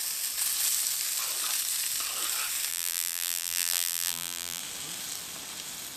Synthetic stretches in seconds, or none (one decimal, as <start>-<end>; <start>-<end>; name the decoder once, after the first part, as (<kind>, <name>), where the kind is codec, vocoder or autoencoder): 2.7-4.6 (vocoder, BigVGAN v2)